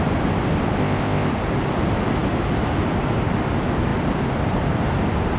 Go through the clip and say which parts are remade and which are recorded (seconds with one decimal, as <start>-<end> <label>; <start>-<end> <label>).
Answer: 0.0-0.8 recorded; 0.8-1.3 remade; 1.3-5.4 recorded